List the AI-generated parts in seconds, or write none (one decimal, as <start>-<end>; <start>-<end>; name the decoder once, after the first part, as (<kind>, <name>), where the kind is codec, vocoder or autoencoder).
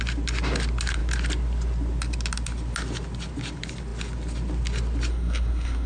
5.1-5.9 (codec, SNAC)